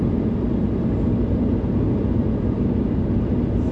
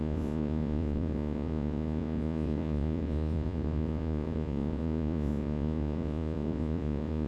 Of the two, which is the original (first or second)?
first